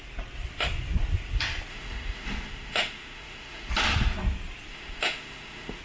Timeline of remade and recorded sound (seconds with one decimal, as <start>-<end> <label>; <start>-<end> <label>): 0.0-1.7 recorded; 1.7-3.7 remade; 3.7-4.7 recorded; 4.7-5.8 remade